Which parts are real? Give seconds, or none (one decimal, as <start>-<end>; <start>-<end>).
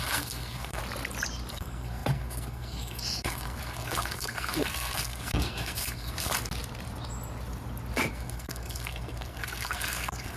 0.8-1.5; 6.3-8.1